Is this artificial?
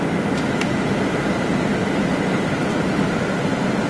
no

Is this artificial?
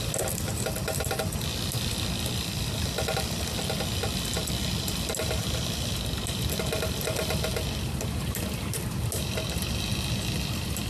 no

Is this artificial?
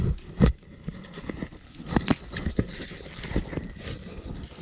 no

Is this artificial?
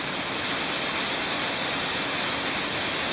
no